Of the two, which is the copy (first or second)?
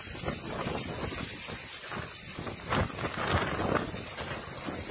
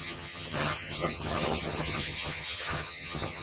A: second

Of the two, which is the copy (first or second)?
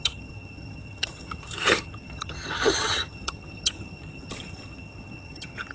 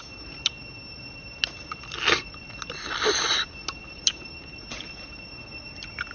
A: first